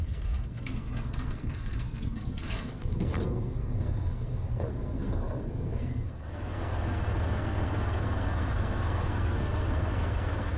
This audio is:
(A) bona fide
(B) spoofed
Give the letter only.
B